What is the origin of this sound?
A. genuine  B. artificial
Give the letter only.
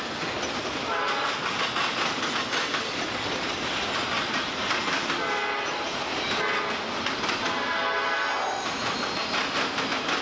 A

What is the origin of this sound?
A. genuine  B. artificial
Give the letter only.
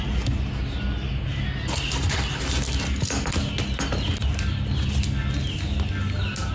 A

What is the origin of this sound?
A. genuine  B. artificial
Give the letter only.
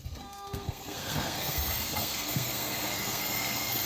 B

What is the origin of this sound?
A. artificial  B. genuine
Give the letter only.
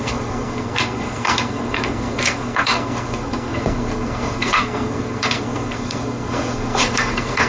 A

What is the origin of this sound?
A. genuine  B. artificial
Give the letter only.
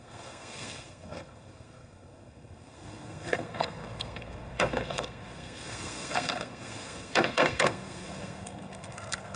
B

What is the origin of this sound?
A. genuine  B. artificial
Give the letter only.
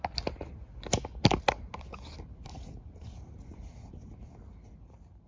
A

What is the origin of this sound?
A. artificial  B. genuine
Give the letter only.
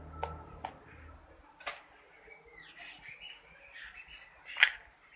B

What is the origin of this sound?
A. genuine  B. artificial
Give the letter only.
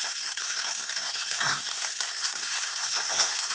B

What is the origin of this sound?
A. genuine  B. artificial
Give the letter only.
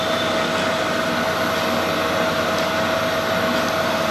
A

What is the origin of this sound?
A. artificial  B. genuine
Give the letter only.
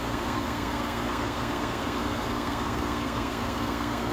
A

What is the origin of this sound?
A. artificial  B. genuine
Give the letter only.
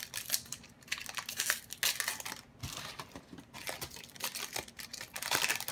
B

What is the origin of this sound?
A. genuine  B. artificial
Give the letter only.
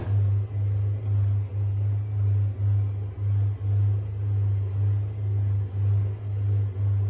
A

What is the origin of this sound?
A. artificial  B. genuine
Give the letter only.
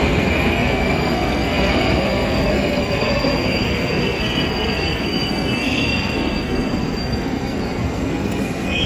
A